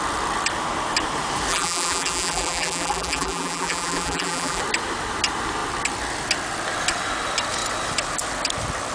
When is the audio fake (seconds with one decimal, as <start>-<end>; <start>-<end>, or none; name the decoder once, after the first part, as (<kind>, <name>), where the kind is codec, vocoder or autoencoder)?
1.5-4.6 (vocoder, BigVGAN v2)